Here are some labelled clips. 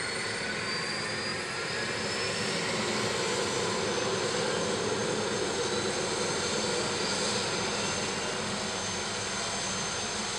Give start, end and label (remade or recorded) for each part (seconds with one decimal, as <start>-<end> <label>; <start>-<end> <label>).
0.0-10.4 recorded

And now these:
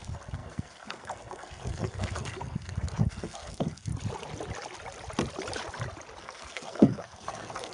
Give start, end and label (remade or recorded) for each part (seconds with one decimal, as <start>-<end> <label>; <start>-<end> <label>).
0.0-3.9 remade; 3.9-6.2 recorded; 6.2-7.7 remade

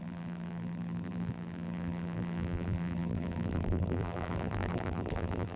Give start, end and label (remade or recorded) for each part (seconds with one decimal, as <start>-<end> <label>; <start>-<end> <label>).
0.0-5.6 remade

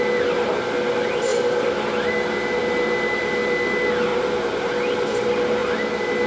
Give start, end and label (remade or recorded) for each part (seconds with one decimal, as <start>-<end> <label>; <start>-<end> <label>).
0.0-4.1 recorded; 4.1-4.7 remade; 4.7-6.3 recorded